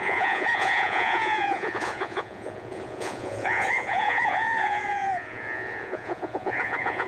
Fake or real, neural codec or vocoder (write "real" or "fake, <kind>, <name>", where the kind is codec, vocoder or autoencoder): fake, vocoder, Vocos